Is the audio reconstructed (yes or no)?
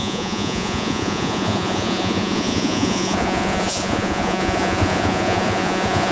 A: yes